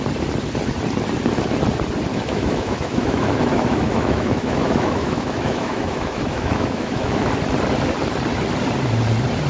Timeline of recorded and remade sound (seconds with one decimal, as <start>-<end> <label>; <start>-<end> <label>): 0.0-2.1 recorded; 2.1-7.3 remade; 7.3-9.5 recorded